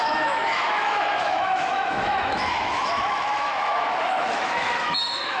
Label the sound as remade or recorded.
remade